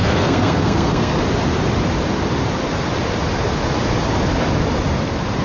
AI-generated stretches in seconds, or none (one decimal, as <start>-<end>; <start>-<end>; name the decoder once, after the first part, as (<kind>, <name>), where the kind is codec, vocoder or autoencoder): 0.0-1.2 (codec, SNAC)